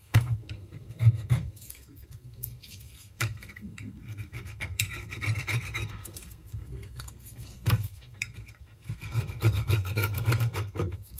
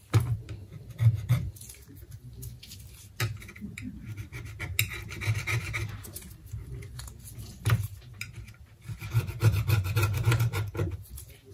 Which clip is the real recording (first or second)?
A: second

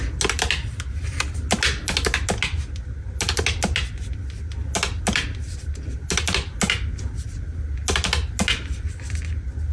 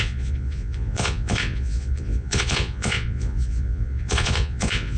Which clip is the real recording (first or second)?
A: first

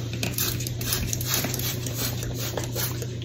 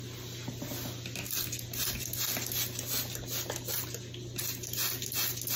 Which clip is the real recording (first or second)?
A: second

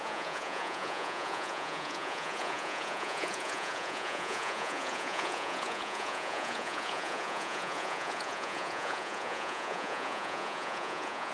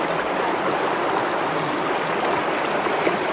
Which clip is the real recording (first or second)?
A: second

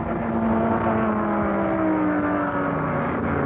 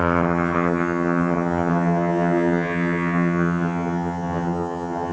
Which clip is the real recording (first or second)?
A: first